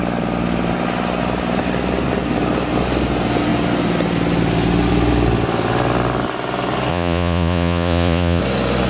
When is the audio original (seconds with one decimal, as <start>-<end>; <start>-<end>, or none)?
0.0-6.9; 8.4-8.9